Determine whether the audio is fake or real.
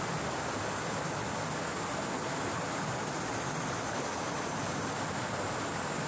real